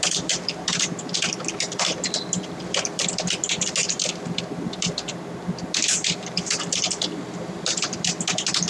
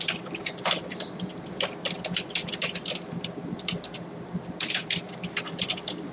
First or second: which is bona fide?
first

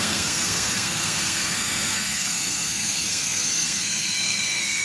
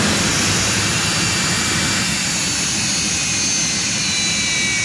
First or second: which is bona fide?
second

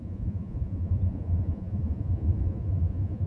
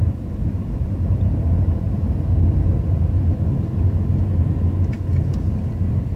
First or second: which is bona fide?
second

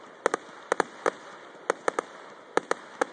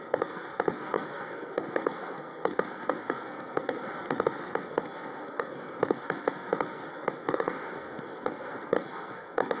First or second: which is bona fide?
first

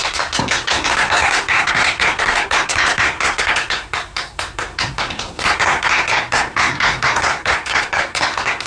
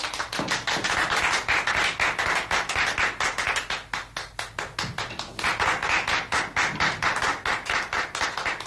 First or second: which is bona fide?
second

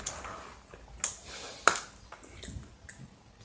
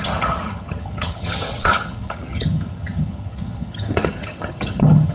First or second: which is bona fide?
first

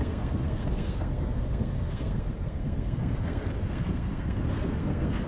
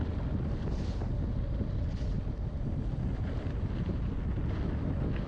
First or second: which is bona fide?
second